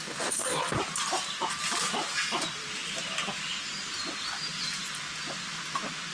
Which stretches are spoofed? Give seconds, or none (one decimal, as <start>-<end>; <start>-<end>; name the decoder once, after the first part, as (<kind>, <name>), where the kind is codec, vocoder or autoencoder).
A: 0.0-0.6 (codec, DAC)